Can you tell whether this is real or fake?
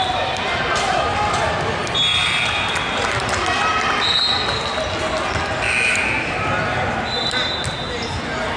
real